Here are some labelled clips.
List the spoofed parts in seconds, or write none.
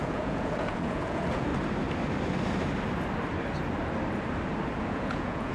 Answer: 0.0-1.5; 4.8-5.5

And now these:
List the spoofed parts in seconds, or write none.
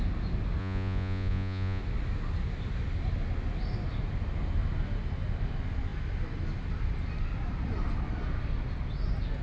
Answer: 0.6-1.8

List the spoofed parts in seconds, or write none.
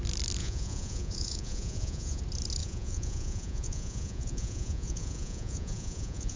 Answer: 0.4-2.2; 2.6-6.4